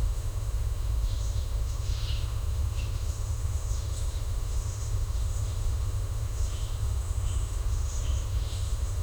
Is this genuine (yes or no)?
no